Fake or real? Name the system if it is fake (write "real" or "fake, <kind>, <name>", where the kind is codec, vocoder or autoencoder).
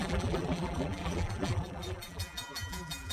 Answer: fake, vocoder, BigVGAN v2